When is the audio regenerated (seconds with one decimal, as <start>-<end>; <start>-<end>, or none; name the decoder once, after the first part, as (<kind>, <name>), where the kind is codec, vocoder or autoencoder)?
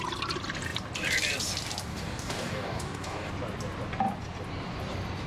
1.9-3.3 (codec, DAC)